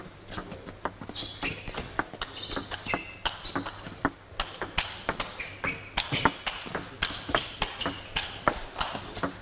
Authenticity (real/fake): real